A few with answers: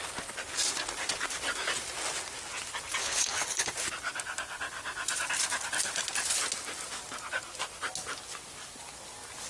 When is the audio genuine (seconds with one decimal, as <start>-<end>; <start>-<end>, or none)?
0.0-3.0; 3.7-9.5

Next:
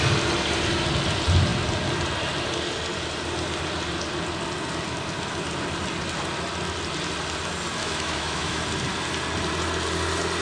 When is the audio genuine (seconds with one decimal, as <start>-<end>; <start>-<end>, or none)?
0.0-7.8; 8.6-10.4

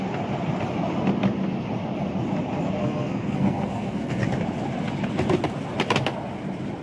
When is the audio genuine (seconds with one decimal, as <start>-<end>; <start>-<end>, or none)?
0.0-2.8; 4.2-6.8

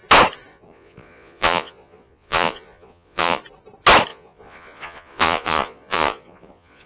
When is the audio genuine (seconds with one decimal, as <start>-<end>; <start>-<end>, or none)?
0.0-0.5; 3.4-4.1

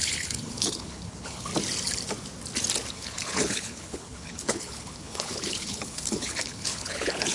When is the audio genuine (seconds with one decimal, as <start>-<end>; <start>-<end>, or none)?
1.5-2.9

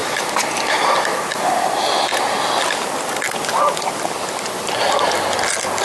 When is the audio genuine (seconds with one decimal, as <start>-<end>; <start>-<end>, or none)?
0.0-5.8

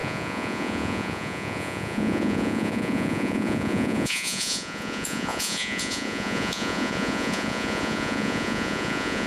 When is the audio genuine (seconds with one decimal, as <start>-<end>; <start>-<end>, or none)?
none

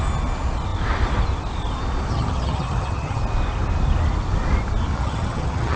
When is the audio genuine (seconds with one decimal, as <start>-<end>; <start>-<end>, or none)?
0.0-2.1; 3.2-4.9